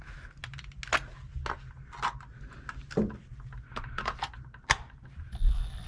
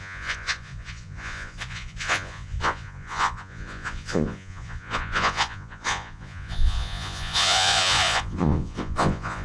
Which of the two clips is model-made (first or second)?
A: second